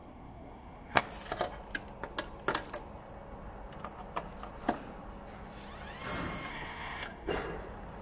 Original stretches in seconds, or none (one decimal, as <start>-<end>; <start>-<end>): 1.0-6.5; 7.3-8.0